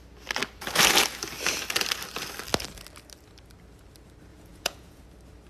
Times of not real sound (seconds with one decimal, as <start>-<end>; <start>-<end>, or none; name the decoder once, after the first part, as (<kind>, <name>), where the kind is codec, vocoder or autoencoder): 4.3-5.0 (vocoder, Vocos)